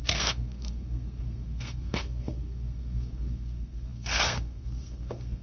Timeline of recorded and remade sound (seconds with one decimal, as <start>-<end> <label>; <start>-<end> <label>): 0.0-5.4 remade